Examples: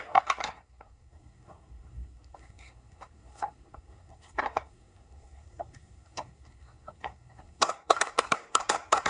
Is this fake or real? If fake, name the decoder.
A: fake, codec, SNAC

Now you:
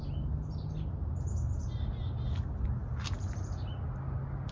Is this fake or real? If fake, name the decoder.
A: real